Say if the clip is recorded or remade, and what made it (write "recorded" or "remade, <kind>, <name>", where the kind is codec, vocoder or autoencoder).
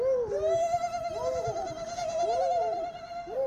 recorded